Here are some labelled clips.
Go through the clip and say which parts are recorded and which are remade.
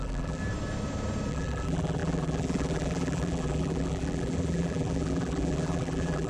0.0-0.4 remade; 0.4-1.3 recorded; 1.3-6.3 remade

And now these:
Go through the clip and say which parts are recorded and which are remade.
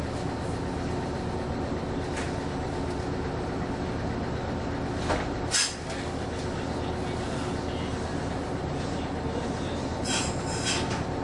0.0-7.9 recorded; 7.9-10.3 remade; 10.3-11.2 recorded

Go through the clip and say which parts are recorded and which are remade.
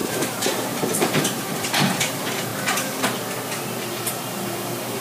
0.0-2.5 remade; 2.5-4.1 recorded; 4.1-5.0 remade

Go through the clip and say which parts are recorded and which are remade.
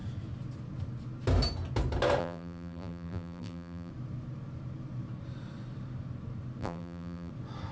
0.0-2.2 recorded; 2.2-3.9 remade; 3.9-6.6 recorded; 6.6-7.3 remade; 7.3-7.7 recorded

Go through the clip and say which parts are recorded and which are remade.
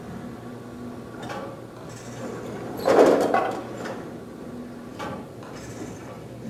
0.0-4.9 recorded; 4.9-6.5 remade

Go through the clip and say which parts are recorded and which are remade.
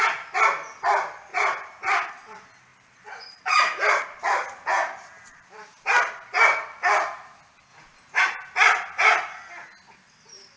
0.0-1.3 recorded; 1.3-2.1 remade; 2.1-2.7 recorded; 2.7-6.1 remade; 6.1-7.7 recorded; 7.7-8.2 remade; 8.2-10.6 recorded